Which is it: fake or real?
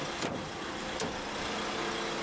real